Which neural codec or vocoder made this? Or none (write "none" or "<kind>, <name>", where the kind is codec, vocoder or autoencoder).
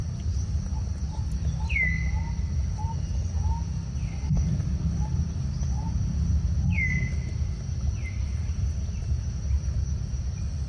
none